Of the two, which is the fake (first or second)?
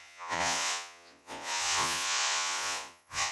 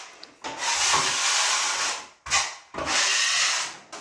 first